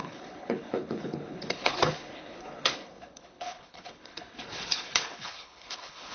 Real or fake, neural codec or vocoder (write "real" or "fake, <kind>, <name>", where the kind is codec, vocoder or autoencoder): fake, codec, HILCodec